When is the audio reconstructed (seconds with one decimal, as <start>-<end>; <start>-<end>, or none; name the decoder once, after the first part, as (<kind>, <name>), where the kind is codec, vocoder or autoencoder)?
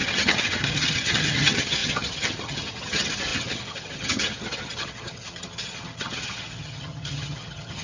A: 0.0-7.8 (vocoder, HiFi-GAN)